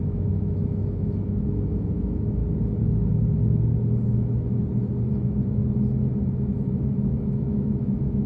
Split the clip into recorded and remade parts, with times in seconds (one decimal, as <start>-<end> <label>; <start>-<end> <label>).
0.0-2.4 remade; 2.4-5.1 recorded; 5.1-5.6 remade; 5.6-6.2 recorded; 6.2-8.3 remade